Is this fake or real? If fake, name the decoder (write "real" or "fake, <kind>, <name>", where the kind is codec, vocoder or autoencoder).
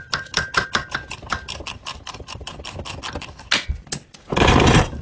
real